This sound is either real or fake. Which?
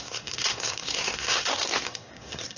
fake